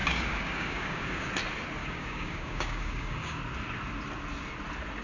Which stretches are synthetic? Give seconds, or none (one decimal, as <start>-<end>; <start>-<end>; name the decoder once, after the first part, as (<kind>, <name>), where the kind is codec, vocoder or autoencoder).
0.0-1.3 (codec, DAC); 1.8-3.4